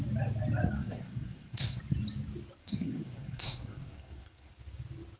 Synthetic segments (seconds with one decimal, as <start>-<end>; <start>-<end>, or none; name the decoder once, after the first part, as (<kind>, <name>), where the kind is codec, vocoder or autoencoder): 0.8-1.8 (codec, SNAC); 2.6-4.5

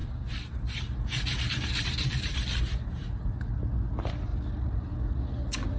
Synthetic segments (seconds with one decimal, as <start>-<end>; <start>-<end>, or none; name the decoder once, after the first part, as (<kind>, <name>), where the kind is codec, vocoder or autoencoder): 0.0-3.5 (vocoder, BigVGAN v2)

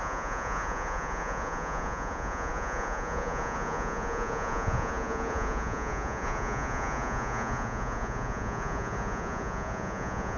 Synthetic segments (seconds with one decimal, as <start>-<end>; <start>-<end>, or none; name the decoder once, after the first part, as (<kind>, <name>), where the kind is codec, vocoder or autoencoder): 0.0-10.4 (vocoder, Vocos)

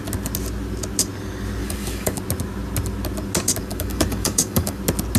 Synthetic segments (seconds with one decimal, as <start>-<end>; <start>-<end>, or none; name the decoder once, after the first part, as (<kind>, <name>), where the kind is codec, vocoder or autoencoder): 1.6-2.2 (codec, DAC); 3.6-4.8